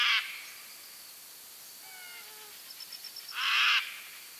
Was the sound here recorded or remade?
recorded